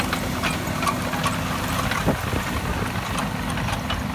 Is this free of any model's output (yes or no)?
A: yes